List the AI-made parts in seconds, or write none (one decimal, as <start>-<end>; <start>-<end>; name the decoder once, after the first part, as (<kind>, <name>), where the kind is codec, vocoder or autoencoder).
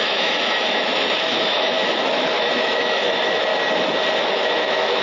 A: 0.0-3.5 (autoencoder, DAC-VAE); 4.2-5.0